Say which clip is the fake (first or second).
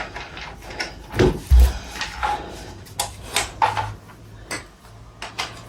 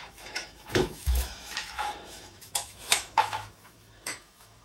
second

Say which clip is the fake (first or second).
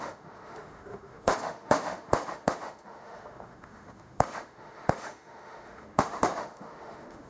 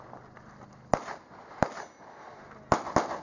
first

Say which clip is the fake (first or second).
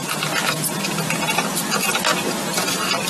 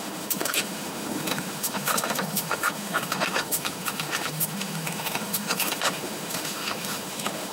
second